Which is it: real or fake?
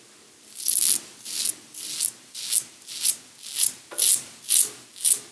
real